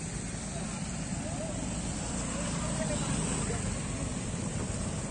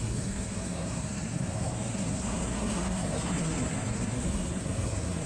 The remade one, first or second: second